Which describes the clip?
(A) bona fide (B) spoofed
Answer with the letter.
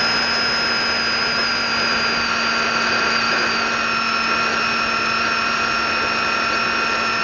A